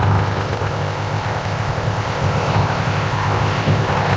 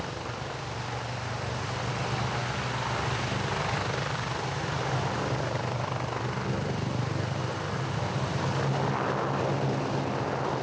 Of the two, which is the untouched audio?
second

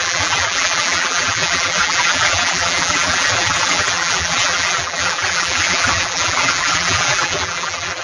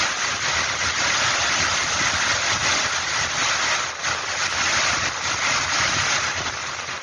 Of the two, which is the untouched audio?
second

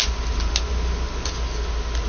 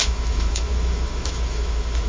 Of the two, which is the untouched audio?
first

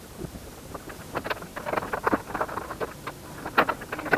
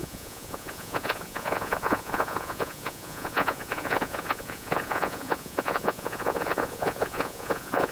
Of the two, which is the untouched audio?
first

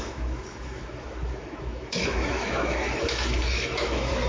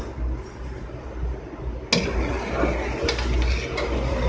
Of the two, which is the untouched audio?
second